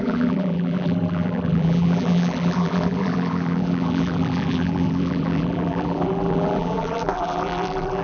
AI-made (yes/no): yes